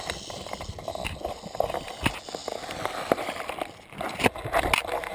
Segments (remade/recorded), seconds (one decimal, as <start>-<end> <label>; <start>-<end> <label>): 0.0-5.1 recorded